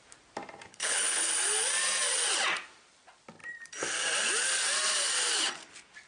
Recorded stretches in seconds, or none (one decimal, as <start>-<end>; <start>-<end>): 0.0-0.7; 1.3-6.1